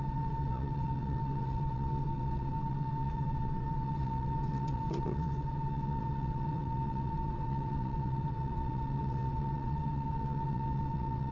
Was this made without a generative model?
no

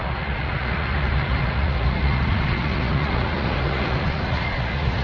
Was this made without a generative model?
no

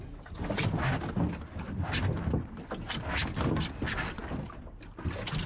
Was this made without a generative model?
yes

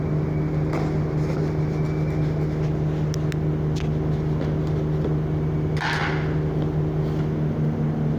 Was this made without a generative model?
yes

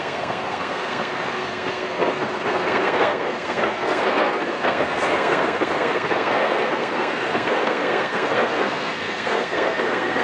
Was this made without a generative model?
no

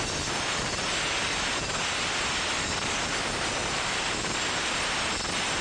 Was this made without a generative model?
yes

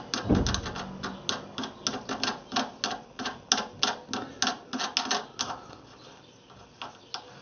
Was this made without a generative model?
yes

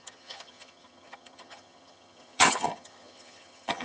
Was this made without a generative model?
no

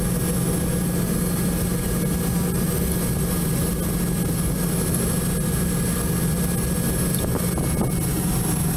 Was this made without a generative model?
yes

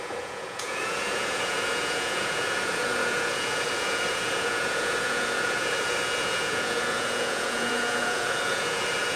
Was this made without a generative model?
no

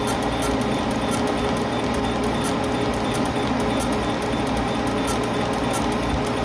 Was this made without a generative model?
yes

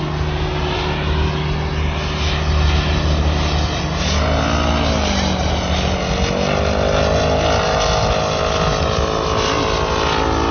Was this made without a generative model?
yes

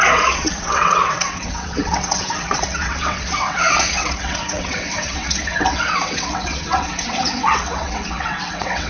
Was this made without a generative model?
no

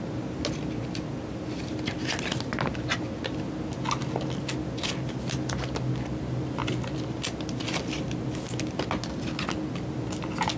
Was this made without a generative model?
yes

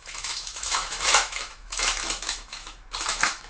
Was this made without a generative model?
no